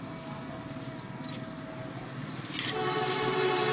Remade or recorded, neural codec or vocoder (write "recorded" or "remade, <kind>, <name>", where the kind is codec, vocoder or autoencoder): recorded